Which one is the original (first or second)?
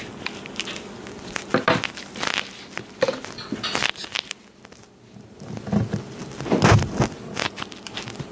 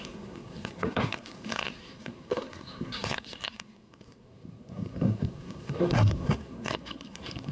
first